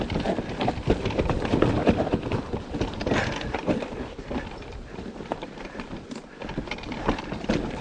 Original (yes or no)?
yes